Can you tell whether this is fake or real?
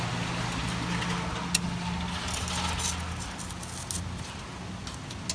real